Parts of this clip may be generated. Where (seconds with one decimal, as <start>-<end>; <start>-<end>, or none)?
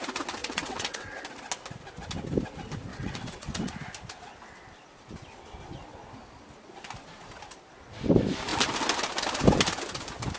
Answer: 0.4-1.2; 2.9-3.7